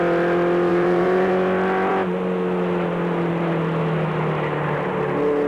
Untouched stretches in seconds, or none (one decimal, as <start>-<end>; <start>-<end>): 0.0-0.7; 1.3-5.5